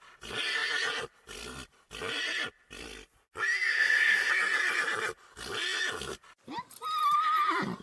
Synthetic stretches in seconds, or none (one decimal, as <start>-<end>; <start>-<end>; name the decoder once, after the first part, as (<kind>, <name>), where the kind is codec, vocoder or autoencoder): 3.7-4.3 (codec, SNAC)